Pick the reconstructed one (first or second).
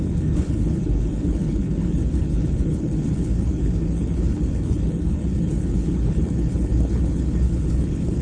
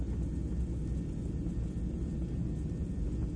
first